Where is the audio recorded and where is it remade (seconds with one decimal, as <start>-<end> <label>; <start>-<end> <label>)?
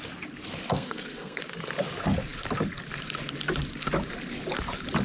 0.0-0.7 recorded; 0.7-1.4 remade; 1.4-5.0 recorded